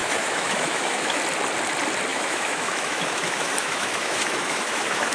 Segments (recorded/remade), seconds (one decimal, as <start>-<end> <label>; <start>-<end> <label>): 0.0-1.2 remade; 1.2-2.1 recorded; 2.1-5.1 remade